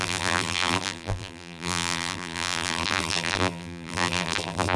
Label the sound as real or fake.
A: fake